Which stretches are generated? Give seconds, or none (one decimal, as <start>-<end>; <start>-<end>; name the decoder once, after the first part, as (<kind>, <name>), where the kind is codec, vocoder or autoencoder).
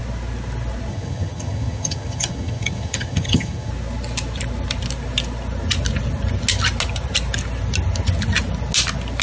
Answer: 0.9-3.7 (vocoder, HiFi-GAN)